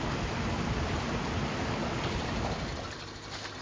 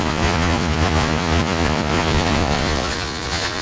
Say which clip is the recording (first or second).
first